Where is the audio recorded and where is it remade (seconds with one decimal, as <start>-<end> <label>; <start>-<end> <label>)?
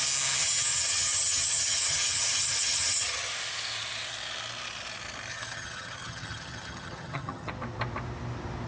0.0-0.4 recorded; 0.4-3.3 remade; 3.3-5.3 recorded; 5.3-7.5 remade; 7.5-8.7 recorded